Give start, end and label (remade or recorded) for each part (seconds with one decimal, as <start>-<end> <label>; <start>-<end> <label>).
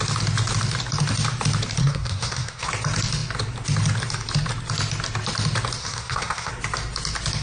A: 0.0-1.8 recorded; 1.8-2.7 remade; 2.7-5.8 recorded; 5.8-6.5 remade; 6.5-7.4 recorded